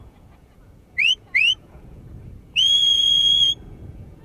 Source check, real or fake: fake